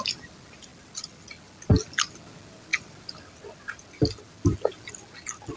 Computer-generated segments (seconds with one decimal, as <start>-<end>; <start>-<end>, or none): none